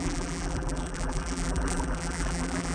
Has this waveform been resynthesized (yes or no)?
yes